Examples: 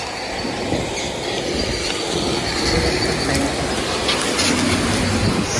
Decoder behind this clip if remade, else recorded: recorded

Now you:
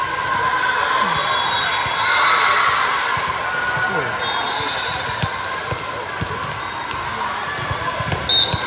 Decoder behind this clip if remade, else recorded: recorded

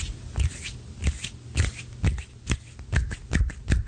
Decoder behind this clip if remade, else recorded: recorded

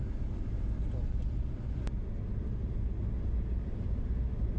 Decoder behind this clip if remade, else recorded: recorded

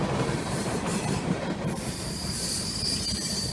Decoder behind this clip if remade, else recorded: remade, vocoder, BigVGAN v2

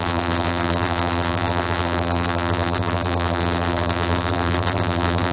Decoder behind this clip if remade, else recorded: remade, vocoder, BigVGAN v2